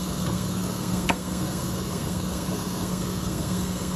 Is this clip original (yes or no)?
no